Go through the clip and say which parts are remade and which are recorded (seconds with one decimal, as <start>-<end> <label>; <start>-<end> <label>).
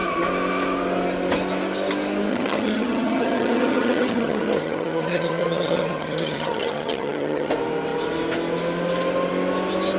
0.0-2.3 recorded; 2.3-7.5 remade; 7.5-10.0 recorded